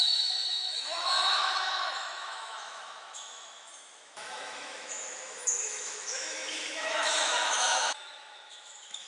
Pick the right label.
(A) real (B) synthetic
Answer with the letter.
B